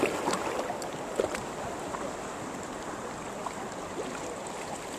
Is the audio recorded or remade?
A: recorded